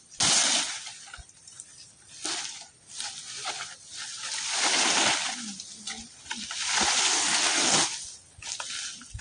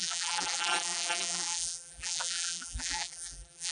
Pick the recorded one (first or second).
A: first